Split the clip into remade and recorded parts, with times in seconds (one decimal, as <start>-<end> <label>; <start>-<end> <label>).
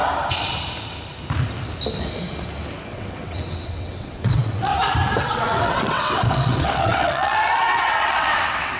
0.0-2.9 recorded; 2.9-4.7 remade; 4.7-5.3 recorded; 5.3-8.8 remade